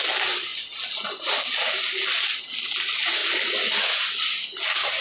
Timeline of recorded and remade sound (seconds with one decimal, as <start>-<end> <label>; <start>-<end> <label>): 0.0-5.0 recorded